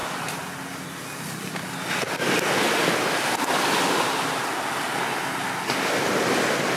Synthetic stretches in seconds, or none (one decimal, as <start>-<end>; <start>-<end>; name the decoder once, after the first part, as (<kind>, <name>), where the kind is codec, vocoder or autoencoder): none